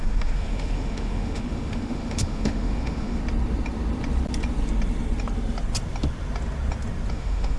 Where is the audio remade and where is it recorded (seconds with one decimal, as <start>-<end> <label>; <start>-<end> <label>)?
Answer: 0.0-3.2 remade; 3.2-7.1 recorded; 7.1-7.6 remade